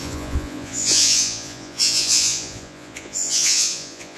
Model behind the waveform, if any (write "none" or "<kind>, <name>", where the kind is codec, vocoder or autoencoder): vocoder, Vocos